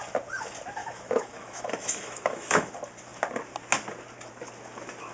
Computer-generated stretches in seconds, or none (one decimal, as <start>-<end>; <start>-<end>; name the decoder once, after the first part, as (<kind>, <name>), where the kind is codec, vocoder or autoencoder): 0.8-2.7 (autoencoder, DAC-VAE)